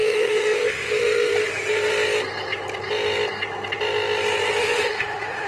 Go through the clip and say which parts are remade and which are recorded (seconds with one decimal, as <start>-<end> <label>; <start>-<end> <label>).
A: 0.0-1.3 remade; 1.3-4.6 recorded; 4.6-5.5 remade